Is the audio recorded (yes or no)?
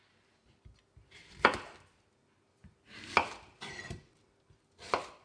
yes